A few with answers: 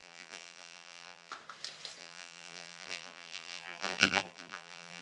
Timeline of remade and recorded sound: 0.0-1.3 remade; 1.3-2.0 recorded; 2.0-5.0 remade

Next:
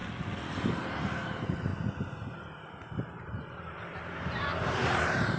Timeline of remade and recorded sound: 0.0-0.8 recorded; 0.8-1.7 remade; 1.7-3.0 recorded; 3.0-5.4 remade

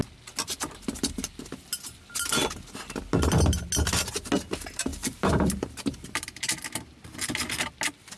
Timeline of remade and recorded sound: 0.0-4.9 recorded; 4.9-6.9 remade; 6.9-8.2 recorded

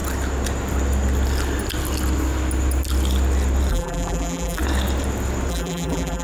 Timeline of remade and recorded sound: 0.0-3.7 recorded; 3.7-4.6 remade; 4.6-5.5 recorded; 5.5-6.2 remade

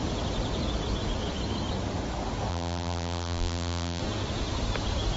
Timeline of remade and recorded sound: 0.0-2.5 recorded; 2.5-4.0 remade; 4.0-5.2 recorded